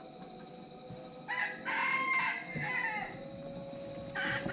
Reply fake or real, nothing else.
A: real